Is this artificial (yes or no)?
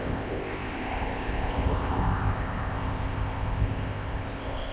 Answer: yes